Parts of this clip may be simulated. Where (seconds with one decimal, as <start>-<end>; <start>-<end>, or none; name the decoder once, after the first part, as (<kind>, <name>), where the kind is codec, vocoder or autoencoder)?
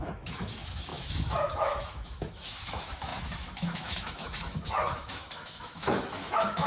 0.0-6.7 (autoencoder, DAC-VAE)